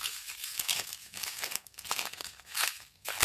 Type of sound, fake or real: fake